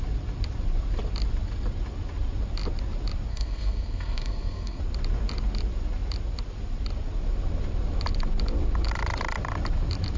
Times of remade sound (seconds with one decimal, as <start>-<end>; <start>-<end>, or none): 3.3-4.8